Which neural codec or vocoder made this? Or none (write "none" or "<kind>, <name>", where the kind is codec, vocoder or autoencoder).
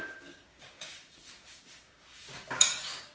codec, DAC